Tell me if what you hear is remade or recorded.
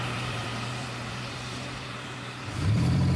remade